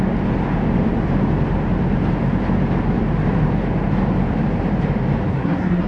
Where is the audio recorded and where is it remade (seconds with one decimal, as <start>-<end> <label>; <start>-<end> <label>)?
0.0-5.3 recorded; 5.3-5.9 remade